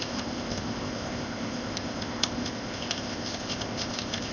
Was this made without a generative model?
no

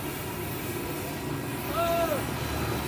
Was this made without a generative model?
yes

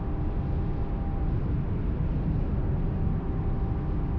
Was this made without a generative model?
yes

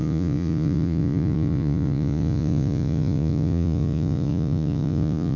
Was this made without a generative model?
no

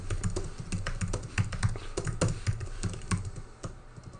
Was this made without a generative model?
yes